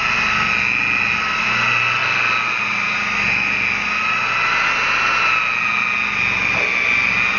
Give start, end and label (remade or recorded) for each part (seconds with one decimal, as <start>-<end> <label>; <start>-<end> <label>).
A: 0.0-7.4 recorded